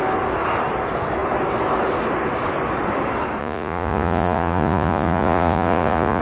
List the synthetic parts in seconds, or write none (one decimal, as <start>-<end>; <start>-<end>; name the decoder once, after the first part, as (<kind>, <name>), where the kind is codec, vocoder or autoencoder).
3.4-6.2 (vocoder, Vocos)